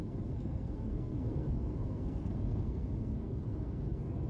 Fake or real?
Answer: fake